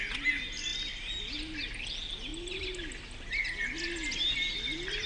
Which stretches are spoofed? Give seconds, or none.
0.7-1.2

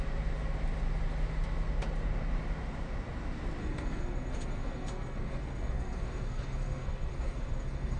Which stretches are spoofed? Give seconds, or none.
3.6-8.0

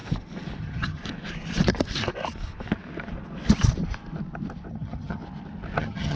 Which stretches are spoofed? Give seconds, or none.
0.6-1.0; 4.7-5.2; 5.8-6.2